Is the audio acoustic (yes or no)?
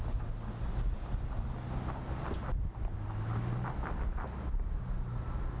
yes